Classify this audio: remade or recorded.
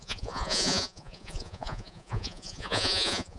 remade